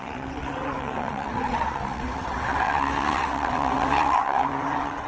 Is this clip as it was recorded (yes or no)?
no